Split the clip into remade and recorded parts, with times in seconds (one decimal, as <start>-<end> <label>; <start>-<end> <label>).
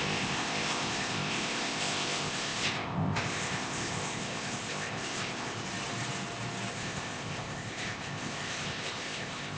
0.0-5.6 remade; 5.6-6.7 recorded; 6.7-9.6 remade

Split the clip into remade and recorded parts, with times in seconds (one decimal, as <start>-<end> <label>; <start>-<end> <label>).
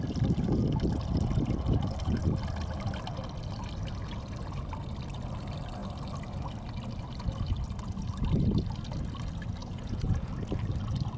0.0-9.6 recorded; 9.6-10.3 remade; 10.3-11.2 recorded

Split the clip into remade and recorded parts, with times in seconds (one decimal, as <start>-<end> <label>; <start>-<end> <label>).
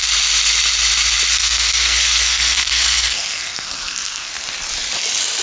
0.0-1.3 recorded; 1.3-4.3 remade; 4.3-5.4 recorded